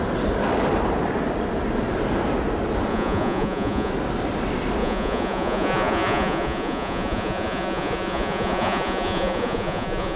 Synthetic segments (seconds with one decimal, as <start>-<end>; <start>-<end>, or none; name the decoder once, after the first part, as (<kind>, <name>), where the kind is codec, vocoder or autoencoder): 2.9-3.9 (vocoder, Vocos); 4.8-10.2